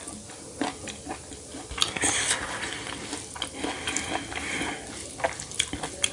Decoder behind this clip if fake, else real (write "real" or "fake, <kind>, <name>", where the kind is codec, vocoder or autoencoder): real